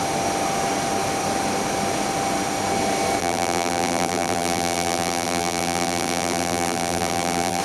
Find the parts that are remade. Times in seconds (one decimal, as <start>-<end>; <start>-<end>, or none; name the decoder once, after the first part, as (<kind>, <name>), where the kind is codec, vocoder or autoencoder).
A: 3.2-7.6 (vocoder, BigVGAN v2)